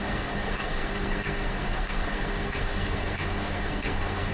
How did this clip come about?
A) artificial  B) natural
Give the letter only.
A